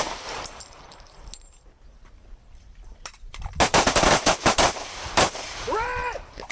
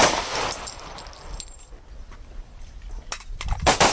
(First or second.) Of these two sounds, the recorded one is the second